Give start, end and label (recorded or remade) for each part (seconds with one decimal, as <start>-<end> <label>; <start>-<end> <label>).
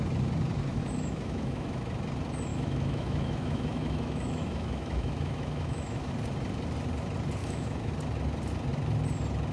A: 0.0-0.7 recorded; 0.7-1.8 remade; 1.8-2.5 recorded; 2.5-6.1 remade; 6.1-7.4 recorded; 7.4-7.9 remade; 7.9-9.5 recorded